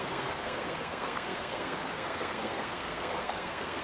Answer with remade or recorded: remade